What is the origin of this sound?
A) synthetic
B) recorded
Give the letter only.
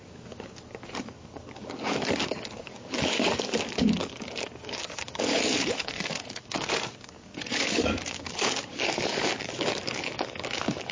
A